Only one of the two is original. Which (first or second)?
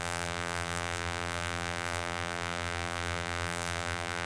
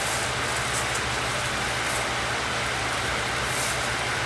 second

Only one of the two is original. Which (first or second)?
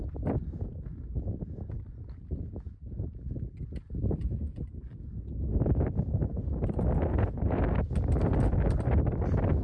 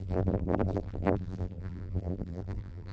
first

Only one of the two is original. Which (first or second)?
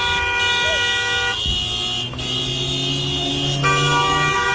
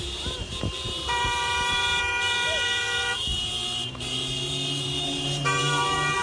first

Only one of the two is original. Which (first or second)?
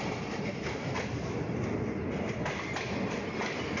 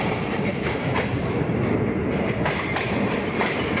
first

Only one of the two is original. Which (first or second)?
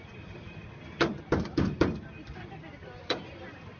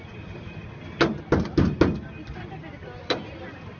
second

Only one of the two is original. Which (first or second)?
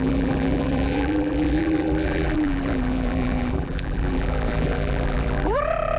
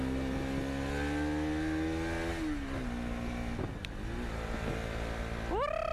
second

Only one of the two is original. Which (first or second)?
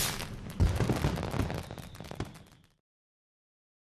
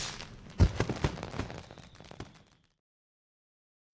first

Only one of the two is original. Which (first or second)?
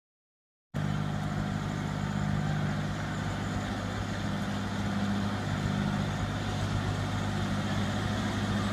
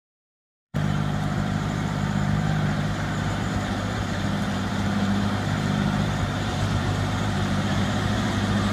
first